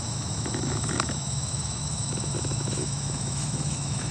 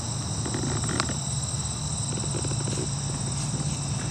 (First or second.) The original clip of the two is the second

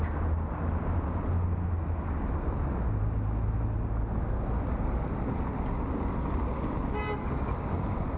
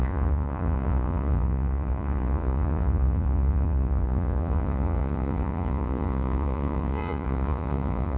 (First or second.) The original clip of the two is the first